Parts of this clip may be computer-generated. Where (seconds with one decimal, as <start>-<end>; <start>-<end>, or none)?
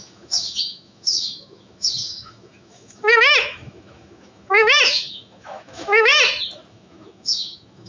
0.0-6.1; 6.7-7.9